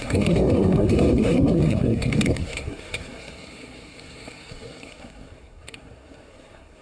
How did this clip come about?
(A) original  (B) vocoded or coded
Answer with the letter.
B